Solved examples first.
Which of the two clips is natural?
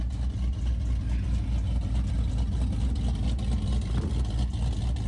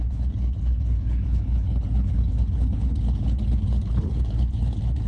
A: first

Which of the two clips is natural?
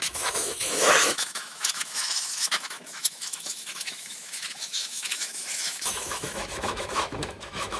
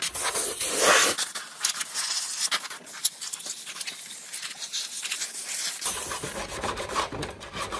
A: second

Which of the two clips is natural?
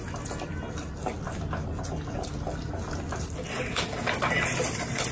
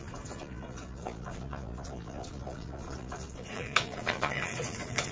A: first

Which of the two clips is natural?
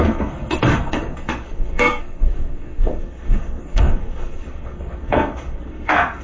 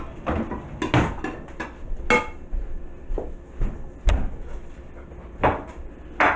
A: second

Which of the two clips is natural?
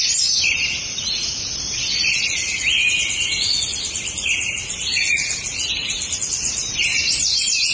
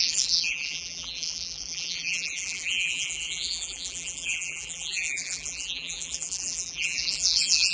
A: first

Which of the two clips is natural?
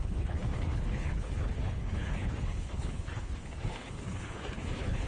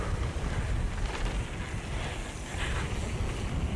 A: second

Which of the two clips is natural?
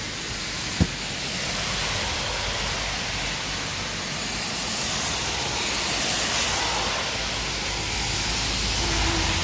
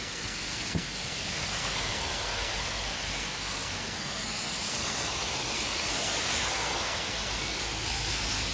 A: first